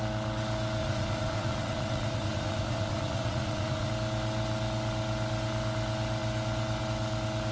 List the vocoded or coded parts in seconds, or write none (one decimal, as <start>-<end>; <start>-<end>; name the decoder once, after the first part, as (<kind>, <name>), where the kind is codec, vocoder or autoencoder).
0.8-3.9 (vocoder, Vocos)